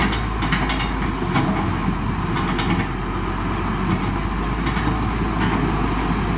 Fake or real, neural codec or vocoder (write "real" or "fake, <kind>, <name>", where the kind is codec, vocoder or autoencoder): real